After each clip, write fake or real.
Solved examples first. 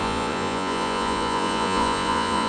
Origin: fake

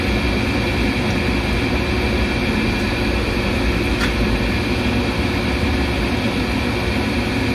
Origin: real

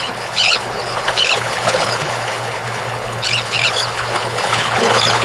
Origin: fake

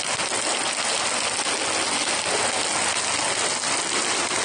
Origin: real